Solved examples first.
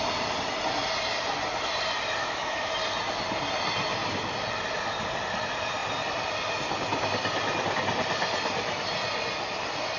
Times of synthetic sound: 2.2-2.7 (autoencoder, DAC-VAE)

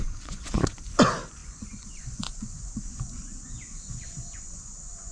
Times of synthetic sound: 0.0-5.1 (vocoder, Vocos)

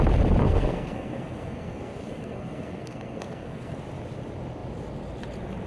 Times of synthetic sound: 0.4-3.8 (codec, SNAC)

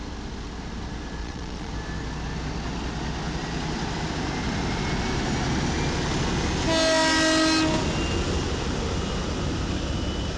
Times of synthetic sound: 1.2-1.7 (vocoder, Vocos)

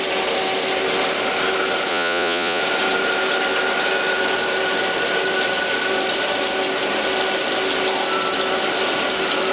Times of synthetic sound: 1.9-2.6 (vocoder, Vocos)

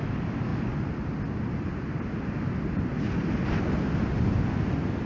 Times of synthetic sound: none

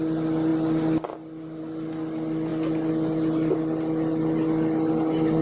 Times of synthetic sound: none

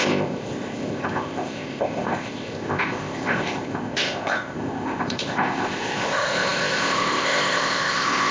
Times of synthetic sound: 0.0-8.3 (codec, ZipCodec)